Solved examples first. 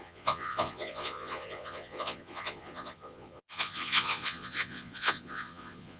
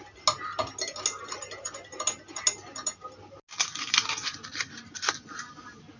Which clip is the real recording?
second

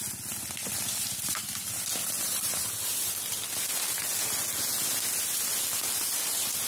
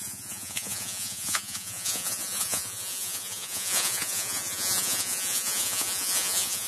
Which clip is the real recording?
first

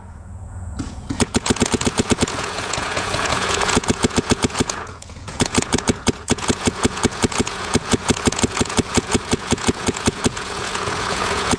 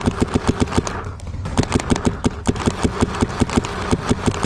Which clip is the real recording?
second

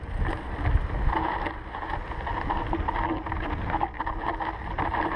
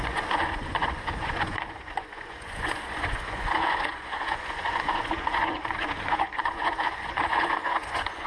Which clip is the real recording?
first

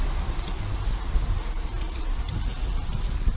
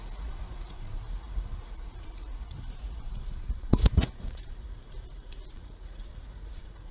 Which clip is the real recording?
first